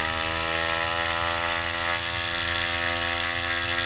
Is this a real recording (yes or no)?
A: yes